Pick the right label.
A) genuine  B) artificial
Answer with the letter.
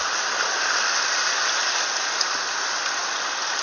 A